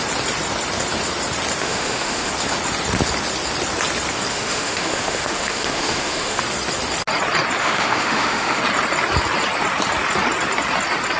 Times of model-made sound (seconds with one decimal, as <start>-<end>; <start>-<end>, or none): 1.6-2.3; 4.3-6.4; 7.6-8.6